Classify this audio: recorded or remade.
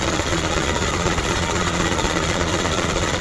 remade